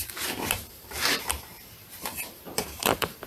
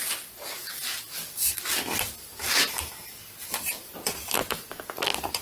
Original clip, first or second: second